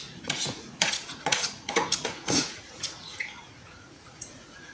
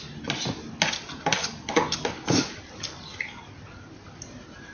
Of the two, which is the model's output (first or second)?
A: first